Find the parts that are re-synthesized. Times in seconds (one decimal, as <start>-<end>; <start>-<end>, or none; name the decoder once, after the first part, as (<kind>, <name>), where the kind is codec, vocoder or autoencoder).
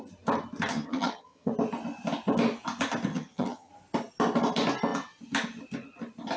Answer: 0.7-1.5 (vocoder, HiFi-GAN); 3.1-3.7